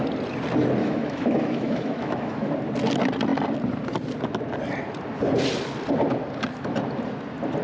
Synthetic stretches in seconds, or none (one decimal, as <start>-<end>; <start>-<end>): 0.8-2.5